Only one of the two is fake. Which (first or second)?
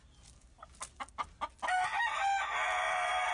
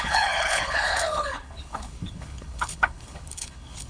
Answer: second